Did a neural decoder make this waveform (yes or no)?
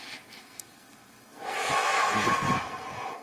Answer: yes